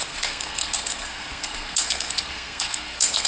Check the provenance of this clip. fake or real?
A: fake